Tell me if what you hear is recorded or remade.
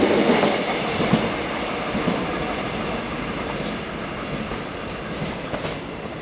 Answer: recorded